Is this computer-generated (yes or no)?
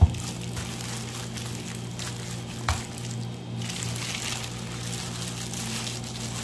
no